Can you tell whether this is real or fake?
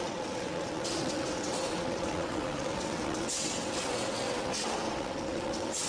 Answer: fake